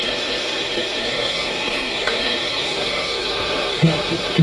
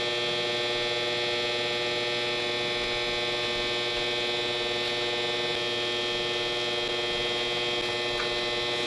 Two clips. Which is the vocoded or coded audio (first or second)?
first